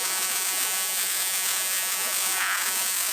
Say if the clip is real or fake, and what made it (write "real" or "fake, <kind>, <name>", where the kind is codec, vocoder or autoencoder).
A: fake, vocoder, Vocos